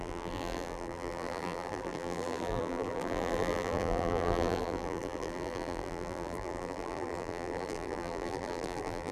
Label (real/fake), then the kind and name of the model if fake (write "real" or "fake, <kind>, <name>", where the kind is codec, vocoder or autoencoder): fake, vocoder, BigVGAN v2